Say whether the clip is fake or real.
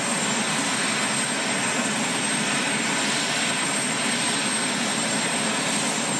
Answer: real